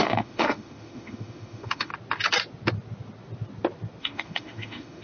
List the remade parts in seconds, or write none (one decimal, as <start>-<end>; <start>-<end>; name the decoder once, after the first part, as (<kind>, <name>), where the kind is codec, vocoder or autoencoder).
0.0-1.9 (autoencoder, DAC-VAE); 4.0-5.0